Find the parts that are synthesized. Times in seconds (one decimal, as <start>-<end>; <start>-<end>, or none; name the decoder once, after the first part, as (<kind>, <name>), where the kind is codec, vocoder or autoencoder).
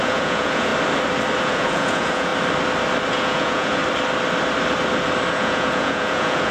0.0-0.7 (vocoder, Vocos); 1.4-2.3; 3.1-3.8; 5.3-6.5